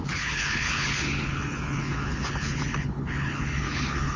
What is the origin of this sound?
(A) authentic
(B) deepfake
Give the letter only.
B